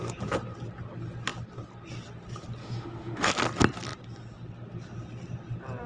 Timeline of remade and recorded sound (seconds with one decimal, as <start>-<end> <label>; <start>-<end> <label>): 0.0-2.6 recorded; 2.6-3.3 remade; 3.3-5.9 recorded